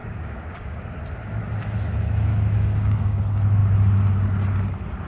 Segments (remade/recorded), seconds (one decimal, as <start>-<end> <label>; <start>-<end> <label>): 0.0-0.8 remade; 0.8-2.3 recorded; 2.3-3.2 remade; 3.2-5.1 recorded